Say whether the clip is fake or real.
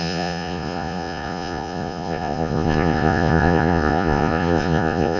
fake